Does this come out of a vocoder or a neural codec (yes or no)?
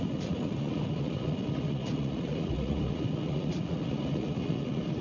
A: yes